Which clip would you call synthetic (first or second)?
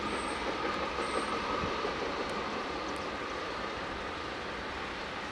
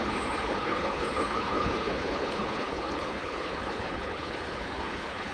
second